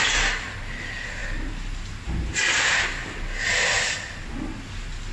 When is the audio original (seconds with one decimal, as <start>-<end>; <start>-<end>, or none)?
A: 0.0-5.1